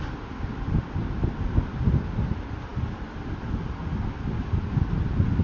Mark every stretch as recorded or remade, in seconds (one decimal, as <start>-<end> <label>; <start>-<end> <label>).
0.0-5.4 recorded